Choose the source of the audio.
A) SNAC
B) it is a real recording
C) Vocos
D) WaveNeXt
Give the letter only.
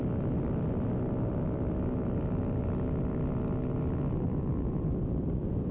B